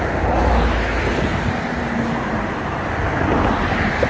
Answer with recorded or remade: recorded